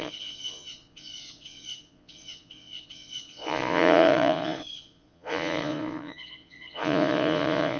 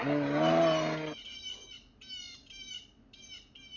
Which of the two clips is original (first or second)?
second